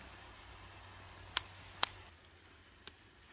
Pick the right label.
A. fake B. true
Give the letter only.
B